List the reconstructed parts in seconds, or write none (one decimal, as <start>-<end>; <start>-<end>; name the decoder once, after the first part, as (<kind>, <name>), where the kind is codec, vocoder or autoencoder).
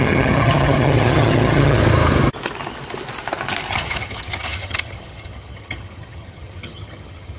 0.0-1.8 (vocoder, HiFi-GAN); 3.7-7.4